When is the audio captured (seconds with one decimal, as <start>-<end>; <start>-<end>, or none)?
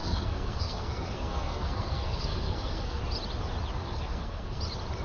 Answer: 3.0-3.8; 4.6-5.0